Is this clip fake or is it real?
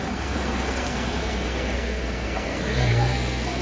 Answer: fake